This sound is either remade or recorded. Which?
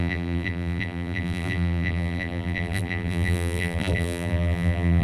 remade